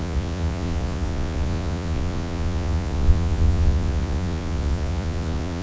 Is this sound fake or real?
fake